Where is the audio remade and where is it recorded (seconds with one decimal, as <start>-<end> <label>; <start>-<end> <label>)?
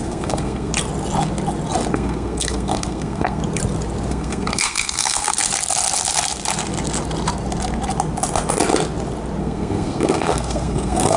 0.0-0.7 remade; 0.7-1.9 recorded; 1.9-3.4 remade; 3.4-4.1 recorded; 4.1-5.3 remade; 5.3-9.4 recorded; 9.4-11.2 remade